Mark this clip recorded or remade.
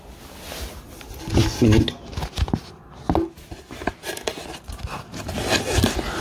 recorded